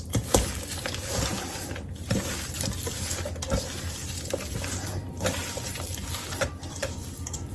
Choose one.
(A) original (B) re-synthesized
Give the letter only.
A